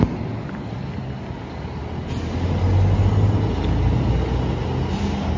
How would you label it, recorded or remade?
recorded